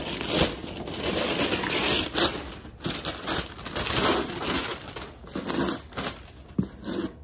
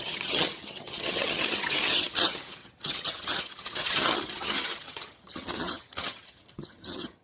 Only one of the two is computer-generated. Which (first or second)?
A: second